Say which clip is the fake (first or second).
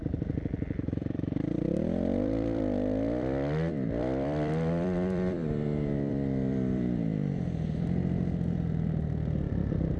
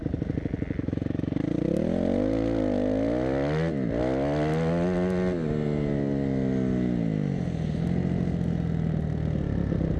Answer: first